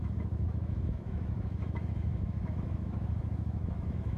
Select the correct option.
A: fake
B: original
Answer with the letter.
A